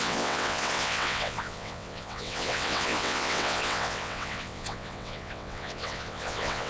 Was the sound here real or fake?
fake